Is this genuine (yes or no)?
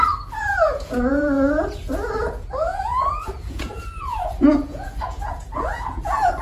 no